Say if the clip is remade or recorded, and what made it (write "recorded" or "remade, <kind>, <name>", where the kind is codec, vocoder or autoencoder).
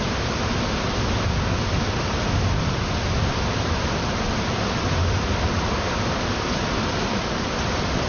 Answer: recorded